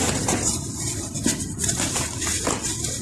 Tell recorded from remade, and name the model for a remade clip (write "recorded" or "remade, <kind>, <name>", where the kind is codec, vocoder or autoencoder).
recorded